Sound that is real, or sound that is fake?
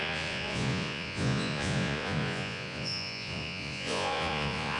fake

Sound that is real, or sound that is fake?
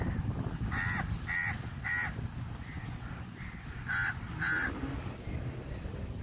real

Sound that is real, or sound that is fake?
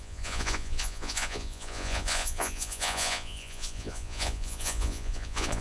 fake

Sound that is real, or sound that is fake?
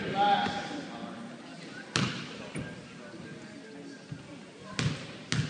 real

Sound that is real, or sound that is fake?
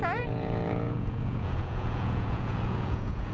fake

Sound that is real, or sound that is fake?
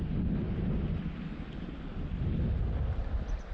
real